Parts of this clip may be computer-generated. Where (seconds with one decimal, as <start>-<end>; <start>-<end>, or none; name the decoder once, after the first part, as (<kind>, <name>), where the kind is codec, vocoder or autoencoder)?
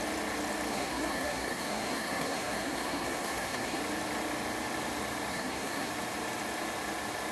0.7-3.8 (codec, SNAC); 5.3-5.9